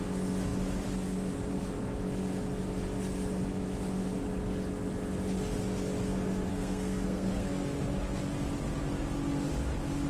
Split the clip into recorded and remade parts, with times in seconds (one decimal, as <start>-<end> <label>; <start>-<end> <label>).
0.0-6.5 recorded; 6.5-7.5 remade; 7.5-10.1 recorded